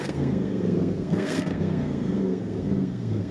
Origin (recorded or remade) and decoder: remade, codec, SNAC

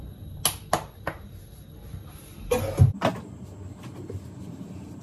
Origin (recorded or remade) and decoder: recorded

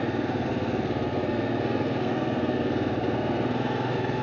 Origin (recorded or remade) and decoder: remade, codec, SNAC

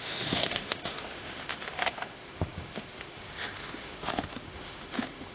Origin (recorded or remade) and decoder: remade, autoencoder, DAC-VAE